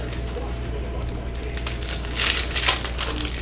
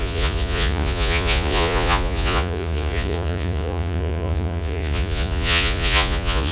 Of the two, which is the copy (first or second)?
second